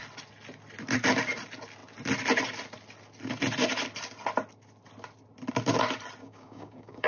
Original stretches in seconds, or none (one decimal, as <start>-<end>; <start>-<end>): 0.0-6.2